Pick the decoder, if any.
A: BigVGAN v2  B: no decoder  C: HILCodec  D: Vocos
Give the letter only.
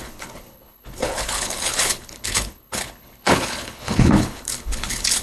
C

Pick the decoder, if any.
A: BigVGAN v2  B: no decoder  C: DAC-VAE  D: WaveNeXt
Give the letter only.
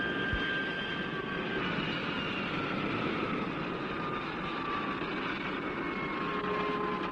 B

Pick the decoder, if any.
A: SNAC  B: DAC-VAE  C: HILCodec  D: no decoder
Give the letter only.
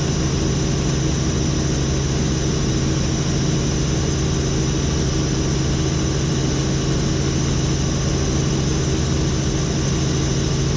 D